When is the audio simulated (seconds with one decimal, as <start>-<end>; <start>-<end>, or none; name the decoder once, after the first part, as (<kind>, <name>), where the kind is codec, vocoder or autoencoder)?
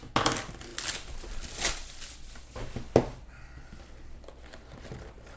none